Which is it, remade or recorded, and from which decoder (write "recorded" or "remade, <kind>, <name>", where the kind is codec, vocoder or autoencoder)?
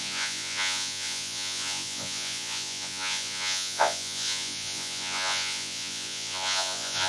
remade, vocoder, Vocos